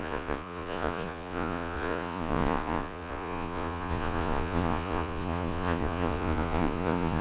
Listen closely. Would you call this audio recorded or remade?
remade